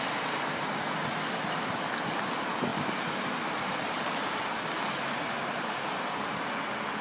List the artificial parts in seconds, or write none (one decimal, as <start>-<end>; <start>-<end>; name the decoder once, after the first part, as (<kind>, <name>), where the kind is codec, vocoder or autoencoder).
none